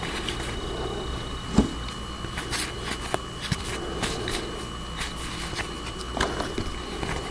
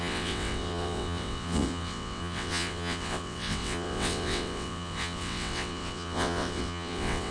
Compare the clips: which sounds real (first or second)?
first